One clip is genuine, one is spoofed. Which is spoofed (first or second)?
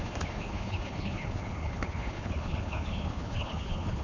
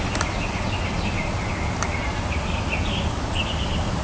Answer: first